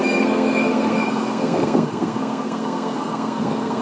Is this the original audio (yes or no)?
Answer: no